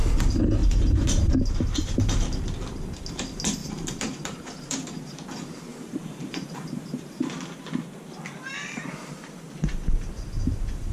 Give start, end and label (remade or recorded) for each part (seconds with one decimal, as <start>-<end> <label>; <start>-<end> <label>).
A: 0.0-0.6 recorded; 0.6-2.4 remade; 2.4-3.6 recorded; 3.6-5.3 remade; 5.3-5.7 recorded; 5.7-7.2 remade; 7.2-10.9 recorded